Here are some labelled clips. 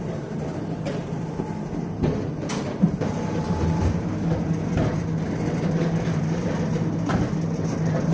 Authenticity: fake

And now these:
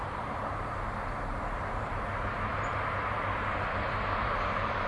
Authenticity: fake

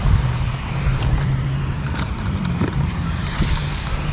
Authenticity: fake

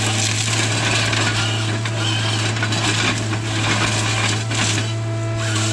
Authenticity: real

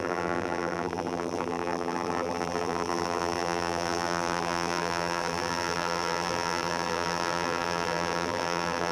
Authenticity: fake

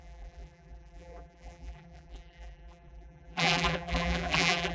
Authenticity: fake